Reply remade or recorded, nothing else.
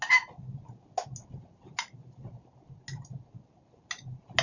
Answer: recorded